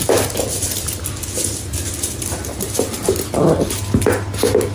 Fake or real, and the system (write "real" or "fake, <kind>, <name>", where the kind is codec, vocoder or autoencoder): real